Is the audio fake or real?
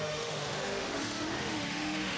fake